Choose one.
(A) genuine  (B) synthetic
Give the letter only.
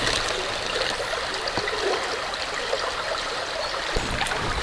A